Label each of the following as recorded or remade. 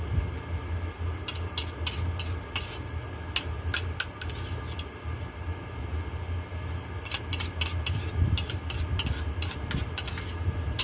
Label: recorded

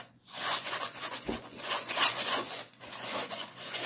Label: remade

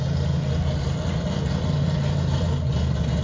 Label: recorded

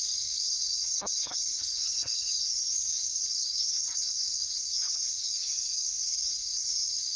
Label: remade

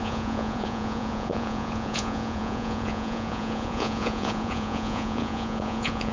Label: remade